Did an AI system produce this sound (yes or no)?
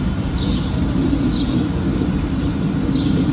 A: no